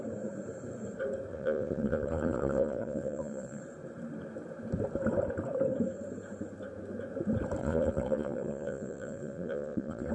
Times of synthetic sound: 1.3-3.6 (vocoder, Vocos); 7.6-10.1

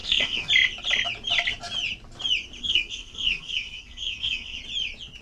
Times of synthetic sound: 0.0-0.5 (codec, SNAC); 2.6-4.6

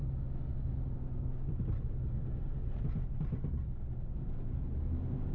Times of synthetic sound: none

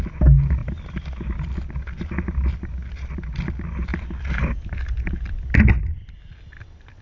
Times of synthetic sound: none

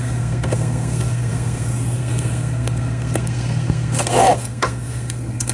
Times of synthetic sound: 0.0-5.5 (codec, SNAC)

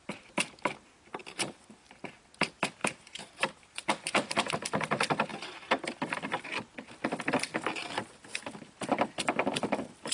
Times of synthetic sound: 1.2-2.1 (vocoder, BigVGAN v2); 2.8-4.5